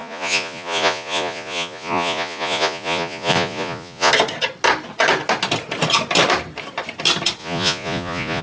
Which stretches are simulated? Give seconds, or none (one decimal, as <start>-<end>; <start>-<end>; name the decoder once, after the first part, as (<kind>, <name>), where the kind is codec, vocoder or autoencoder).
0.0-4.1 (vocoder, Vocos); 7.4-8.4